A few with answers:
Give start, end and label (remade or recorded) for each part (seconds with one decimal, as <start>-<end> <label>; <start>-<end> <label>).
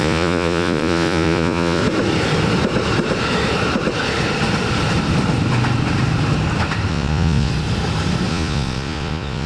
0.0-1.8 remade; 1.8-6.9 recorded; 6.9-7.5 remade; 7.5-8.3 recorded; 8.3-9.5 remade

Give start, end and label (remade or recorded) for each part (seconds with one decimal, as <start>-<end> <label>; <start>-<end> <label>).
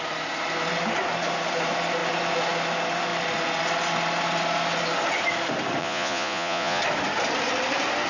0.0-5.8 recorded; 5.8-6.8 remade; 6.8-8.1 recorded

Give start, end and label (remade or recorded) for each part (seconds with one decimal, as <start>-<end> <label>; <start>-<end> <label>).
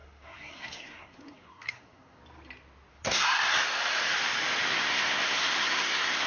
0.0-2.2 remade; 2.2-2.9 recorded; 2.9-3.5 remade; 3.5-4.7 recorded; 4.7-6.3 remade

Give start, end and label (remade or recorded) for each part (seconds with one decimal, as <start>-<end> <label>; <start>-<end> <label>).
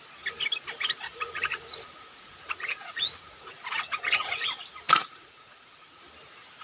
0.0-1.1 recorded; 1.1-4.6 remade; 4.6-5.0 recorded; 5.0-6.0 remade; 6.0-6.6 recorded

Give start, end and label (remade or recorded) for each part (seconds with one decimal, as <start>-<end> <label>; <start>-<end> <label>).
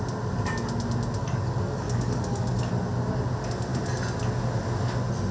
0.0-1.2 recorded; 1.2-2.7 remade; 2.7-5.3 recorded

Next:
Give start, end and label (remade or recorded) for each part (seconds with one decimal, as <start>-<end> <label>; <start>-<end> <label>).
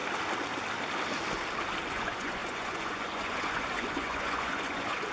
0.0-1.9 recorded; 1.9-5.1 remade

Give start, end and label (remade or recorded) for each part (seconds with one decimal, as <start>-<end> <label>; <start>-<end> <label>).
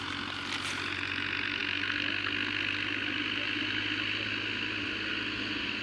0.0-5.8 recorded